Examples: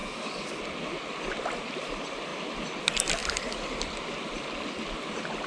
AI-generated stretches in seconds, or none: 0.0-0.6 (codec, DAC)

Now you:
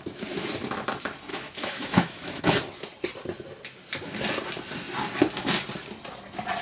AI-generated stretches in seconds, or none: 1.3-2.4 (autoencoder, DAC-VAE)

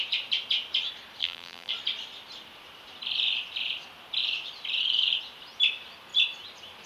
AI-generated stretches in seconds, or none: 1.2-1.7 (vocoder, BigVGAN v2)

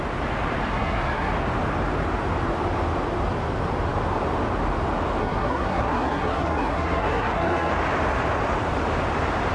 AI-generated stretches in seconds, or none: 0.7-1.3 (codec, SNAC); 5.2-7.7

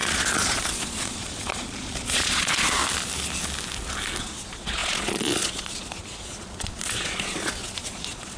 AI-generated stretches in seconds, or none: 0.0-2.8 (vocoder, Vocos); 4.2-8.4

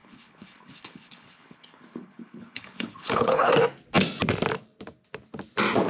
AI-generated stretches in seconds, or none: 0.0-3.5 (codec, HILCodec)

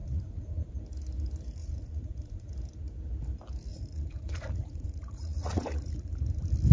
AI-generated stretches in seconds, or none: 0.0-0.7 (vocoder, Vocos); 1.6-2.5; 3.7-6.3